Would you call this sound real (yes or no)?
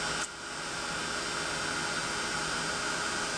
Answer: yes